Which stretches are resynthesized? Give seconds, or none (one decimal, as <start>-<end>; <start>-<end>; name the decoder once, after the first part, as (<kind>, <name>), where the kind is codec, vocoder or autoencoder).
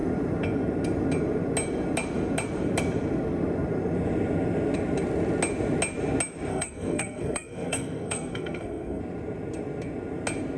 6.5-9.0 (codec, SNAC)